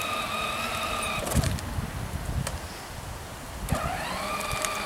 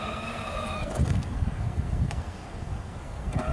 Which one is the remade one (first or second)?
second